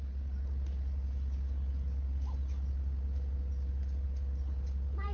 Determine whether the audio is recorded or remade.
recorded